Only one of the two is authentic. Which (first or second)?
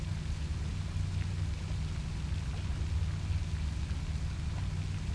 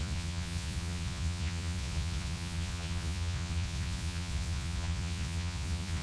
first